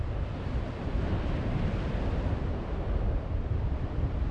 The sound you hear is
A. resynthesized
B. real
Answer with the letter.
B